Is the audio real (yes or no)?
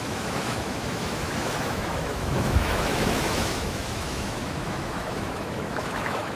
no